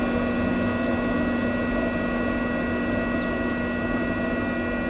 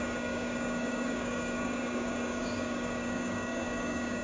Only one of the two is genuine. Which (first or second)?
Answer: first